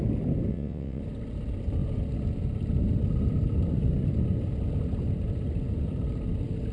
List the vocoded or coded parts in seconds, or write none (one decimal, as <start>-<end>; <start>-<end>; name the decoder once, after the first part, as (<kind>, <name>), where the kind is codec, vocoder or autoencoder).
0.5-1.0 (vocoder, WaveNeXt)